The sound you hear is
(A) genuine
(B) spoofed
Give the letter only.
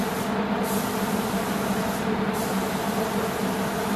A